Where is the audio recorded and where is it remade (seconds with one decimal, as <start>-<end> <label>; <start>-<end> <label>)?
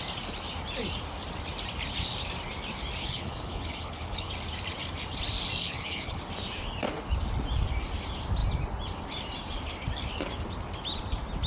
0.0-3.0 recorded; 3.0-4.3 remade; 4.3-5.6 recorded; 5.6-6.2 remade; 6.2-11.5 recorded